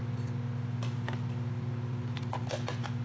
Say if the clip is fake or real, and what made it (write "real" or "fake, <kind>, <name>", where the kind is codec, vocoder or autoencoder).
real